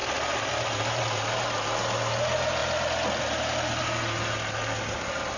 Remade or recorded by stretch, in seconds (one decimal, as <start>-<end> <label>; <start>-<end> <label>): 0.0-5.4 recorded